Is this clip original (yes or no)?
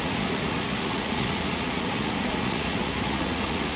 no